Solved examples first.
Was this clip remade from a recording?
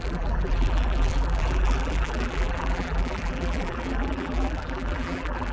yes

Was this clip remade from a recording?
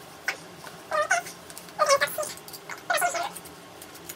no